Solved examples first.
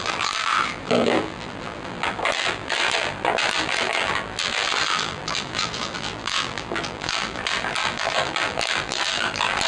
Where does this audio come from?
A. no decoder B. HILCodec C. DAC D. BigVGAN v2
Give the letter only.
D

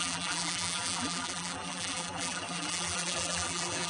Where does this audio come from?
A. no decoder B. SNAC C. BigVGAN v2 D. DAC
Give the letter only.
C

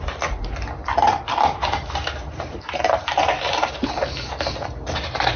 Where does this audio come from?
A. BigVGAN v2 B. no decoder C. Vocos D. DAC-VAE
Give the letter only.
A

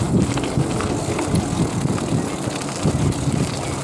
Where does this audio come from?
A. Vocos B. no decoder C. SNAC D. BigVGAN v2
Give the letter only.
B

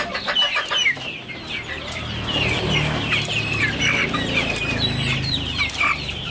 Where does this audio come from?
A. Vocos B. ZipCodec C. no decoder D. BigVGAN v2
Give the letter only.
D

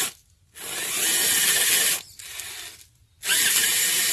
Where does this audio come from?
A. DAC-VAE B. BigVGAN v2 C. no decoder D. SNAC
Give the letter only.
C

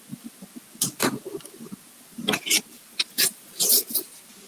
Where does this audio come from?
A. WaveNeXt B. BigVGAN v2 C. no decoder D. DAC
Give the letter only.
C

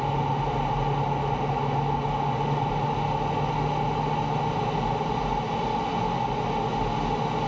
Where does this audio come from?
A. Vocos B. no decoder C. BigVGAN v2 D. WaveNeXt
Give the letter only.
B